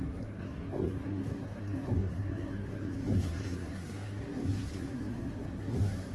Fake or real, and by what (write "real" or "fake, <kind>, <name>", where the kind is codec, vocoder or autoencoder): fake, codec, SNAC